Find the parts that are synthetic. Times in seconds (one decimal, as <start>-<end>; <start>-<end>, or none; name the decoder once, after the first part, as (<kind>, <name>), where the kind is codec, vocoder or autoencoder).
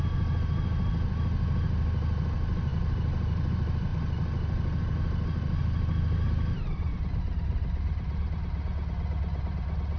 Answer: none